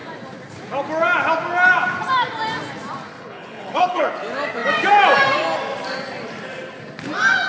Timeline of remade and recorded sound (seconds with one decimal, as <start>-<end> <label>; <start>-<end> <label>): 0.0-3.1 recorded; 3.1-4.1 remade; 4.1-7.5 recorded